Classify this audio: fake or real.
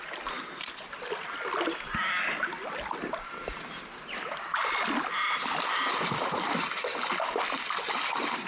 real